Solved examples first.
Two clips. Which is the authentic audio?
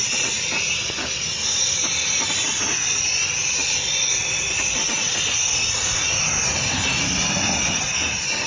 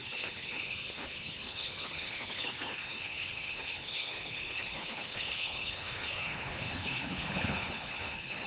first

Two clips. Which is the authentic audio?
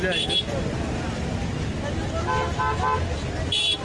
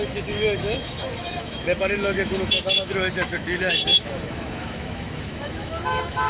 first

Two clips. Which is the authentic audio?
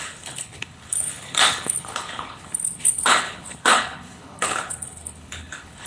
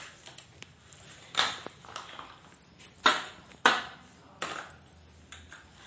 second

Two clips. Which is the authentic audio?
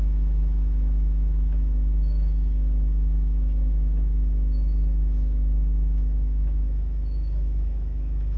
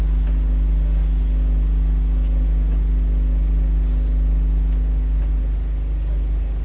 second